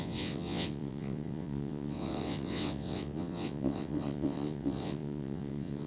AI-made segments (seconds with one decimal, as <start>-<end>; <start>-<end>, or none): 0.0-5.9